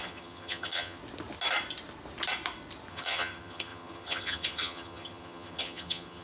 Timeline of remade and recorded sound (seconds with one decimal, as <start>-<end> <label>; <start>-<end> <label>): 0.0-1.0 remade; 1.0-2.9 recorded; 2.9-6.2 remade